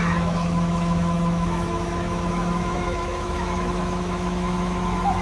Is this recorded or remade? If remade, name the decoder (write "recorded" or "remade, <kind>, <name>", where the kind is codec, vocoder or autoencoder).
remade, autoencoder, DAC-VAE